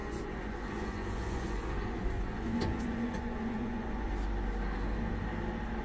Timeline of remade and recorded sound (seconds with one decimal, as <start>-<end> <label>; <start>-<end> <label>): 0.0-4.1 remade; 4.1-5.8 recorded